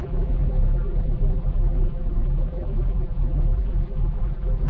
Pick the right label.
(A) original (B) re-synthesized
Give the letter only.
B